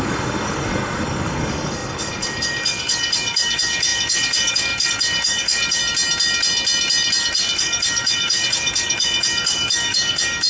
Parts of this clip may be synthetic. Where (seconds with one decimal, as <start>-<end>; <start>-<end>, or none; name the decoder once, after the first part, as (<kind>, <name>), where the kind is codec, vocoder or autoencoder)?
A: 0.0-5.8 (codec, DAC); 7.2-10.5